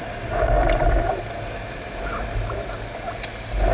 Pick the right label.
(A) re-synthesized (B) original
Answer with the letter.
B